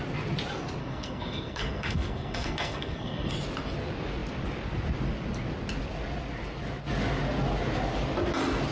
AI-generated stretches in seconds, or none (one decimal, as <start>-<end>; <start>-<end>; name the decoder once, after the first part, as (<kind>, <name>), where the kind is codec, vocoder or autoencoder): 0.8-3.3 (codec, SNAC)